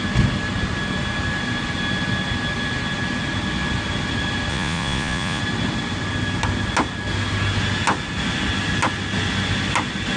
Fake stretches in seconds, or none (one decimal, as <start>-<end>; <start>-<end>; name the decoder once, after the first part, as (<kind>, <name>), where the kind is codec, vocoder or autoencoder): 4.5-5.4 (vocoder, Vocos)